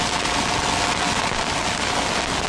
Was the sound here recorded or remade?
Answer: recorded